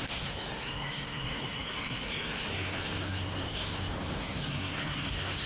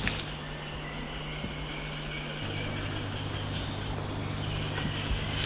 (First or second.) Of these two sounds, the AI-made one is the first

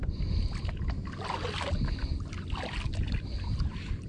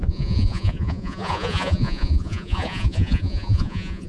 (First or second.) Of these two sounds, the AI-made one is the second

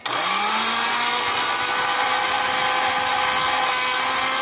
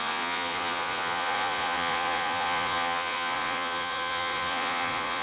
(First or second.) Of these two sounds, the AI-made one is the second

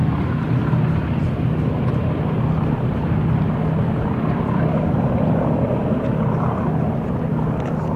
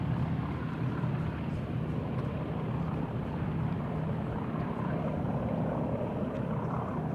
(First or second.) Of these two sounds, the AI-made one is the second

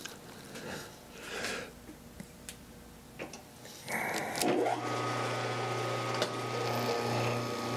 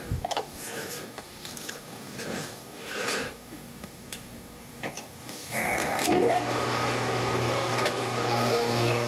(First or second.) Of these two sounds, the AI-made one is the second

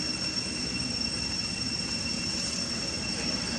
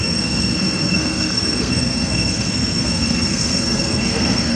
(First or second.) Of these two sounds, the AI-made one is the second